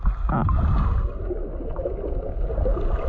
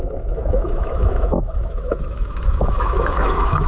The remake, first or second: second